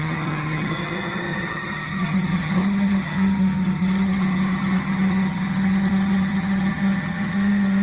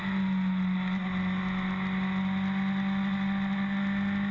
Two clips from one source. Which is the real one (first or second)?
second